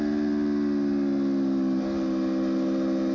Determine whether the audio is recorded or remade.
recorded